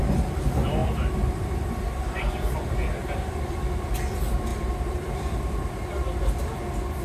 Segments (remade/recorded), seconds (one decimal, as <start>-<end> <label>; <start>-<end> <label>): 0.0-0.8 recorded; 0.8-2.3 remade; 2.3-3.0 recorded; 3.0-3.6 remade; 3.6-4.5 recorded; 4.5-5.5 remade; 5.5-7.0 recorded